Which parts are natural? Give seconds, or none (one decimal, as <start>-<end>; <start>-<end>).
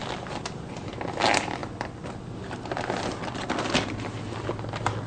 0.0-5.1